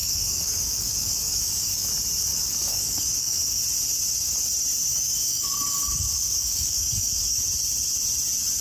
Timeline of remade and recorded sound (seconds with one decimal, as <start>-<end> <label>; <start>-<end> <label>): 0.0-1.9 remade; 1.9-2.3 recorded; 2.3-3.6 remade; 3.6-4.9 recorded; 4.9-7.4 remade; 7.4-8.6 recorded